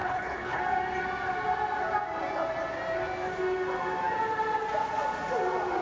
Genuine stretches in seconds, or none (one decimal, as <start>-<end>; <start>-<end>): 0.6-5.8